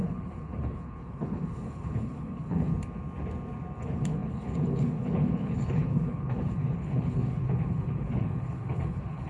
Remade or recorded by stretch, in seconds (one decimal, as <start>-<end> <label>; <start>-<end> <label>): 0.0-2.7 remade; 2.7-3.8 recorded; 3.8-9.3 remade